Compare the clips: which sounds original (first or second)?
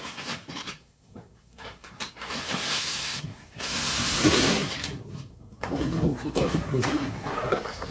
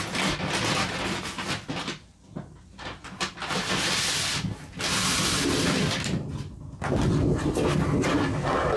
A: second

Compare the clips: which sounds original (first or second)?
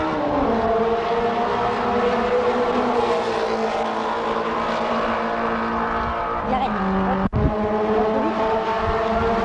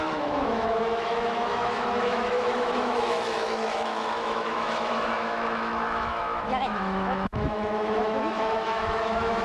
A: first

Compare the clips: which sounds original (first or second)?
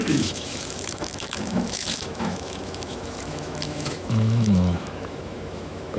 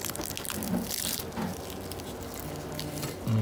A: second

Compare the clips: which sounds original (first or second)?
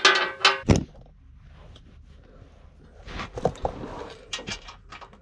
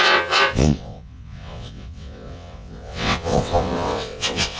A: first